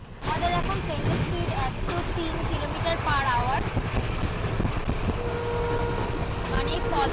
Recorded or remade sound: recorded